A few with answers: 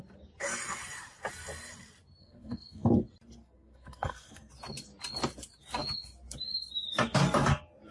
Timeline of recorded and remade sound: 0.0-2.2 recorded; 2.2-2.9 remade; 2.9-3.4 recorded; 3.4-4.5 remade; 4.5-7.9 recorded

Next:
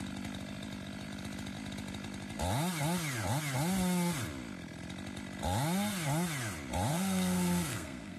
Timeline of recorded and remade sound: 0.0-6.9 recorded; 6.9-8.2 remade

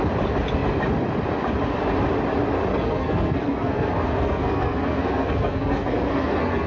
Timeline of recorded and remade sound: 0.0-2.7 recorded; 2.7-6.7 remade

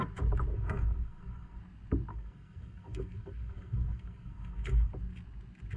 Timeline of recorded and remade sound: 0.0-0.5 recorded; 0.5-1.6 remade; 1.6-2.1 recorded; 2.1-4.9 remade; 4.9-5.8 recorded

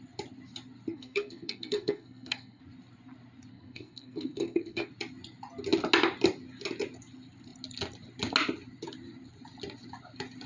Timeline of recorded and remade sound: 0.0-0.9 recorded; 0.9-2.6 remade; 2.6-3.5 recorded; 3.5-4.9 remade; 4.9-10.5 recorded

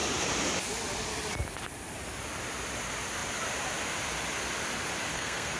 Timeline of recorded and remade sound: 0.0-5.1 recorded; 5.1-5.6 remade